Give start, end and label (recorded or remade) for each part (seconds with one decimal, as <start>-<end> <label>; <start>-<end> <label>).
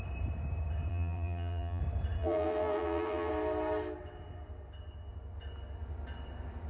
0.0-0.9 recorded; 0.9-1.8 remade; 1.8-2.2 recorded; 2.2-3.3 remade; 3.3-6.7 recorded